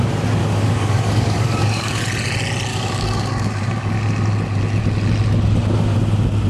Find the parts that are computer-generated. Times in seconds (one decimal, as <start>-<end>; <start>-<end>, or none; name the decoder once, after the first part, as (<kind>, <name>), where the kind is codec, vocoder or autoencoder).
0.4-2.0 (codec, DAC); 2.7-4.0